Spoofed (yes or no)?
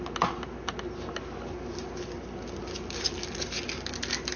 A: no